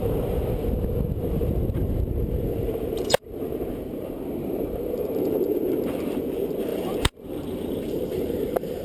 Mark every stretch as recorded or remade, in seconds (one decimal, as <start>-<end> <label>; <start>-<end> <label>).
0.0-0.4 remade; 0.4-1.2 recorded; 1.2-8.8 remade